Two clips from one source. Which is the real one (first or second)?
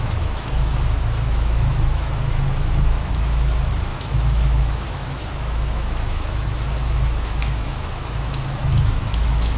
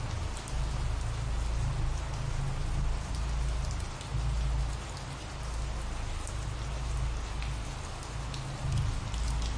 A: second